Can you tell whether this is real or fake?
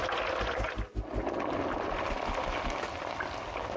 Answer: real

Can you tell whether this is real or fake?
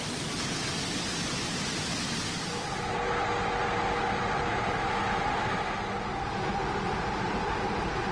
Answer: real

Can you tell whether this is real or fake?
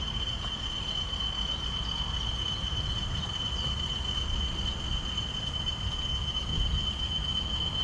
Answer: real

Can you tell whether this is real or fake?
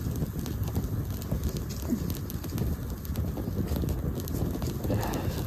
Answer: real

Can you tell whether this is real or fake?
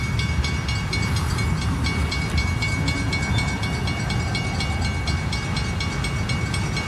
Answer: real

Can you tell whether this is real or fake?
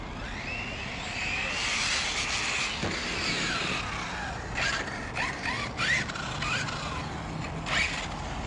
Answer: real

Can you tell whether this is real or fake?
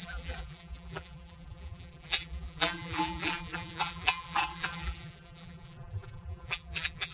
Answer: fake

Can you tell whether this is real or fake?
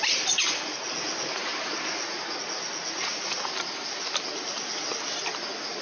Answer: real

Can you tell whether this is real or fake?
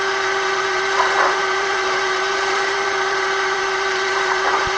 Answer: fake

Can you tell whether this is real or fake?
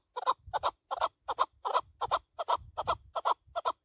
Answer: fake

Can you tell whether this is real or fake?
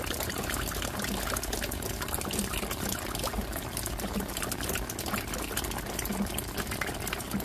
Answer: real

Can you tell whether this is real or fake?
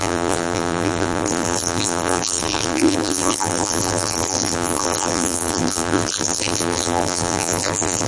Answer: fake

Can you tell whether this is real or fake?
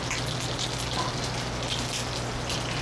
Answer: real